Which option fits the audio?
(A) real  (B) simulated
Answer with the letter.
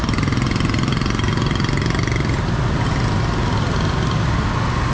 A